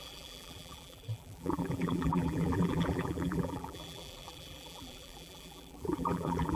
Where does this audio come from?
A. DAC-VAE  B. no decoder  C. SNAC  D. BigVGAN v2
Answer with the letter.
D